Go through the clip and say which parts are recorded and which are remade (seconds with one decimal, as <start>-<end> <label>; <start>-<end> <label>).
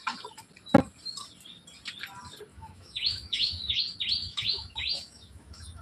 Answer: 0.0-2.5 recorded; 2.5-3.8 remade; 3.8-4.2 recorded; 4.2-5.8 remade